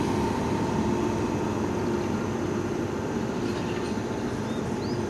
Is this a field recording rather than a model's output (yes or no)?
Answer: yes